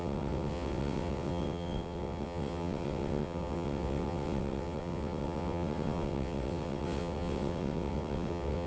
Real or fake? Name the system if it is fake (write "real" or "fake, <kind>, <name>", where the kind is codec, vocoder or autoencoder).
fake, vocoder, WaveNeXt